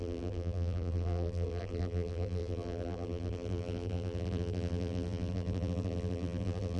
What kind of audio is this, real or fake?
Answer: fake